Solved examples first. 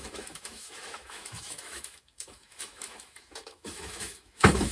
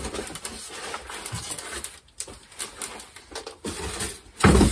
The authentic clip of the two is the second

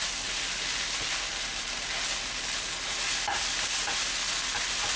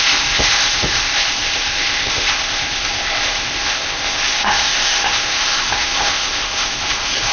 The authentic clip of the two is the first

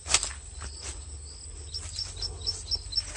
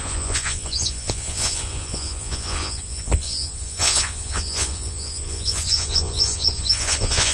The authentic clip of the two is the first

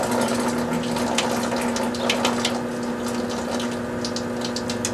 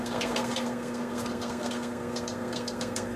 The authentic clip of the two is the first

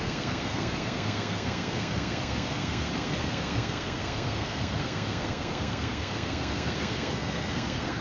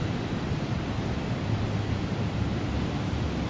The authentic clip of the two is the second